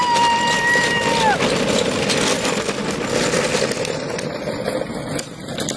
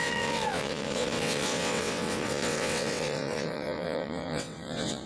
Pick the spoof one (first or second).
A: second